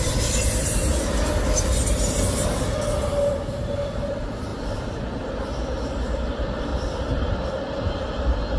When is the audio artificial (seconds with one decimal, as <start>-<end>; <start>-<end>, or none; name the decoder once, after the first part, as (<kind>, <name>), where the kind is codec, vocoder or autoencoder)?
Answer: 0.0-0.9 (vocoder, BigVGAN v2); 3.3-6.7; 7.6-8.6